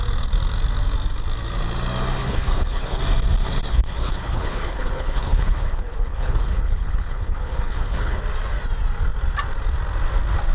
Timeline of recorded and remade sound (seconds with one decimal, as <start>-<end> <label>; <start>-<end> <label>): 0.0-2.2 recorded; 2.2-3.0 remade; 3.0-3.7 recorded; 3.7-8.2 remade; 8.2-10.5 recorded